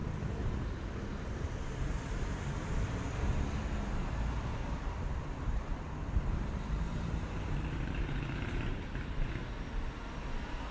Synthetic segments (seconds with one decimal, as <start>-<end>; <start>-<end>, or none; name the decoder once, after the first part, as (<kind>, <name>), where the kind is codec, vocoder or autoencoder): 0.0-2.1 (vocoder, BigVGAN v2); 4.5-9.5